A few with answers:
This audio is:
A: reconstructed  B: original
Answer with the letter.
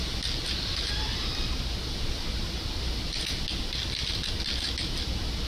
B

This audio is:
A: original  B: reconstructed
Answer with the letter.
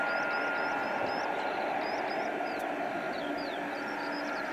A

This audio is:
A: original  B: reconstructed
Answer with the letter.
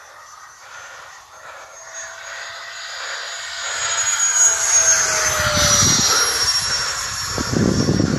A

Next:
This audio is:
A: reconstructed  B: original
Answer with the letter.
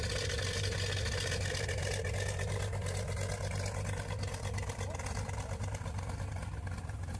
B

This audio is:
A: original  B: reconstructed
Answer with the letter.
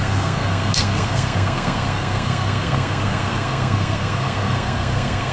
B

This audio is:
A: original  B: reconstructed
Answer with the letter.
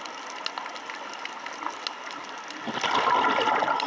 A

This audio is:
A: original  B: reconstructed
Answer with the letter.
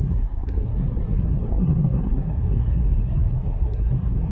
B